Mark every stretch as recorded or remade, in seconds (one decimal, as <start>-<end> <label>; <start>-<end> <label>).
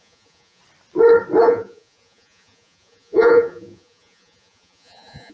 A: 0.0-0.6 remade; 0.6-1.4 recorded; 1.4-5.3 remade